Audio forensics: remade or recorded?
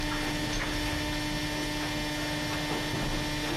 recorded